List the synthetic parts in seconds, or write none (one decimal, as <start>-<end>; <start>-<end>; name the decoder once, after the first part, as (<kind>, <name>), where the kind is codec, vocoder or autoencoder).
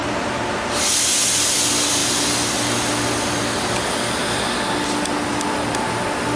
none